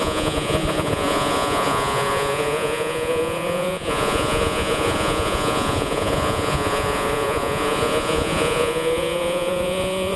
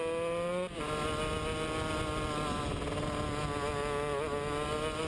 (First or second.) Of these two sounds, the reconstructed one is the first